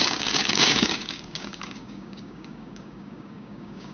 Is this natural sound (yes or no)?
no